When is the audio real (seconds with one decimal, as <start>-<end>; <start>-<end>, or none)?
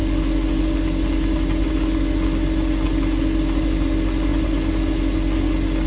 0.0-5.9